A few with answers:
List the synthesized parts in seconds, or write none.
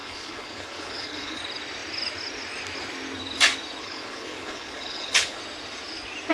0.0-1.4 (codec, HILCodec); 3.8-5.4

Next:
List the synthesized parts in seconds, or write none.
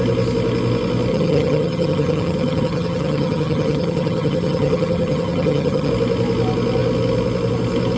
1.1-5.9 (vocoder, HiFi-GAN)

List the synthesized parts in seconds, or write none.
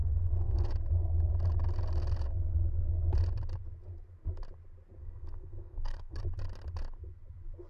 0.0-0.7 (codec, SNAC); 5.0-6.2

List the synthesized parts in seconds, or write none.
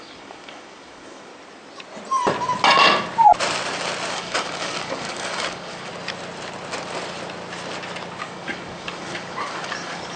0.0-1.3 (codec, DAC); 4.1-5.9; 8.2-10.2